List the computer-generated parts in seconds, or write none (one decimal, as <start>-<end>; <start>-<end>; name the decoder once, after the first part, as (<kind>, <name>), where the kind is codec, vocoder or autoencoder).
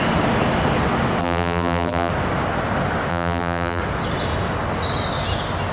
1.2-2.1 (vocoder, BigVGAN v2); 3.1-3.8